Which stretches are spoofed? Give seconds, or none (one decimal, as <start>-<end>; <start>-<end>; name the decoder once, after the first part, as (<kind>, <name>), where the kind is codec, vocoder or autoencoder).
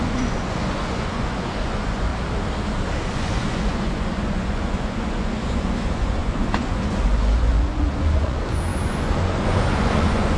0.0-2.1 (vocoder, Vocos); 3.1-10.4